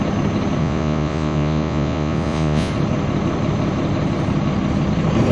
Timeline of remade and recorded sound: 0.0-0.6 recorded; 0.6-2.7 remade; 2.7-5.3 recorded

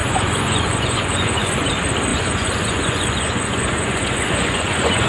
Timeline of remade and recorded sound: 0.0-1.7 remade; 1.7-2.1 recorded; 2.1-5.1 remade

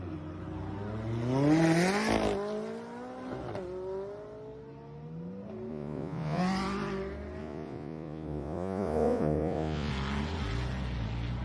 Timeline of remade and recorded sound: 0.0-5.7 recorded; 5.7-6.4 remade; 6.4-7.4 recorded; 7.4-9.9 remade; 9.9-11.4 recorded

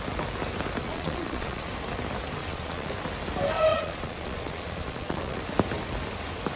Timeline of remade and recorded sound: 0.0-0.8 recorded; 0.8-1.7 remade; 1.7-2.4 recorded; 2.4-2.9 remade; 2.9-3.7 recorded; 3.7-5.4 remade; 5.4-6.6 recorded

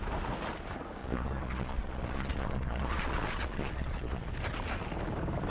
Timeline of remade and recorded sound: 0.0-1.0 recorded; 1.0-4.3 remade; 4.3-5.5 recorded